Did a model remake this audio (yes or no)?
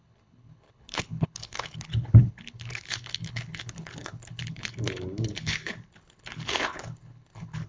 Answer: yes